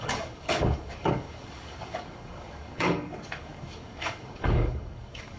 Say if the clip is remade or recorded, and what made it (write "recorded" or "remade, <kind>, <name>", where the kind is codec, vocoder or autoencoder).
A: remade, codec, DAC